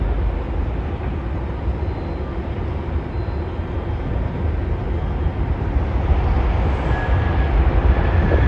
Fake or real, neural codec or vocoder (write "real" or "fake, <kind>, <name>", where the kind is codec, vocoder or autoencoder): real